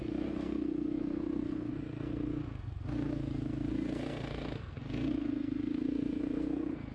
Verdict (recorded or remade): remade